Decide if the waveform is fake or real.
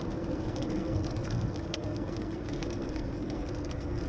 fake